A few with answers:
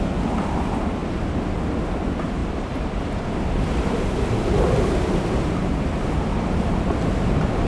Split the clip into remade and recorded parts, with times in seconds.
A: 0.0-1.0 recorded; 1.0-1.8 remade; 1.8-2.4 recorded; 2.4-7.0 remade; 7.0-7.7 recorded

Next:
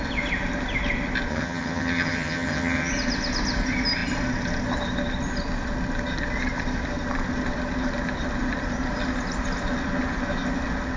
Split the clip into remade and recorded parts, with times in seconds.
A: 0.0-1.3 recorded; 1.3-2.9 remade; 2.9-11.0 recorded

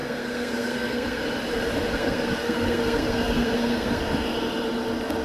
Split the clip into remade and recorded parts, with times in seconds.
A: 0.0-1.2 remade; 1.2-1.9 recorded; 1.9-4.0 remade; 4.0-5.2 recorded

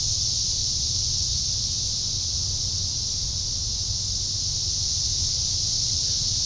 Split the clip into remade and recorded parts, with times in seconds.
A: 0.0-0.6 recorded; 0.6-1.4 remade; 1.4-6.5 recorded

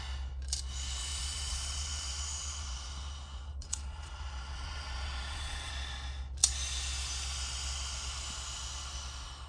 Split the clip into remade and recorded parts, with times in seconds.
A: 0.0-1.0 recorded; 1.0-5.7 remade; 5.7-9.5 recorded